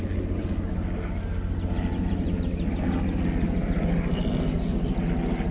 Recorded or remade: recorded